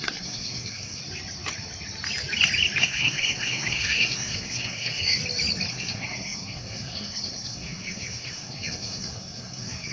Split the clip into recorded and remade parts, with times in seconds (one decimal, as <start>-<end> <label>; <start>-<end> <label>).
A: 0.0-1.0 remade; 1.0-2.8 recorded; 2.8-5.2 remade; 5.2-5.7 recorded; 5.7-9.9 remade